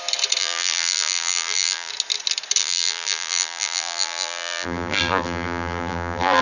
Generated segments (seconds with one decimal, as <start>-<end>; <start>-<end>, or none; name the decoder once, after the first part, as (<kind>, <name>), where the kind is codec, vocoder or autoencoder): 0.4-1.9 (vocoder, BigVGAN v2); 2.6-6.4

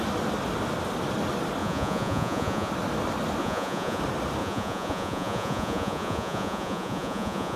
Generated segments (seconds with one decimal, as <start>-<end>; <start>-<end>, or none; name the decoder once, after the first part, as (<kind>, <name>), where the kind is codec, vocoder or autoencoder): 1.6-2.7 (vocoder, Vocos); 3.4-4.0; 4.4-7.6

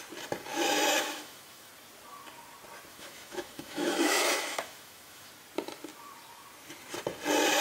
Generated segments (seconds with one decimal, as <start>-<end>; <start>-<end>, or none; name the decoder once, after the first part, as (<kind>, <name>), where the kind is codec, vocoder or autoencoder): 0.5-1.7 (autoencoder, DAC-VAE); 2.9-5.3

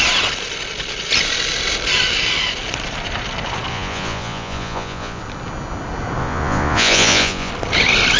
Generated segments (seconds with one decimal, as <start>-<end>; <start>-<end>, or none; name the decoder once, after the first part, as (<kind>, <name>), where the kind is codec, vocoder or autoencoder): 3.7-5.2 (vocoder, Vocos); 6.2-7.5